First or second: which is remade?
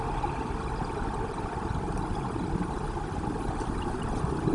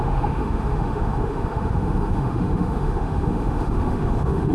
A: second